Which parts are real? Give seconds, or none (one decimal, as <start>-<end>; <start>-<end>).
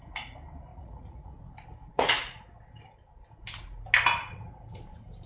0.0-0.7; 1.5-1.9; 2.5-4.2; 4.8-5.3